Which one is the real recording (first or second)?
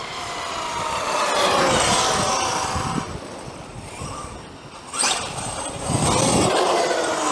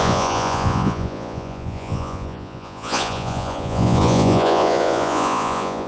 first